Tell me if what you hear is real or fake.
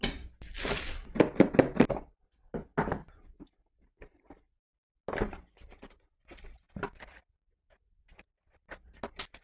real